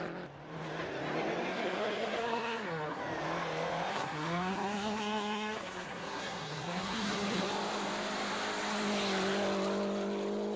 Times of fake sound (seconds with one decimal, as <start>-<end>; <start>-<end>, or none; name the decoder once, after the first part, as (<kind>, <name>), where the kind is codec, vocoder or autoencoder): 1.5-3.0 (codec, SNAC); 3.9-7.5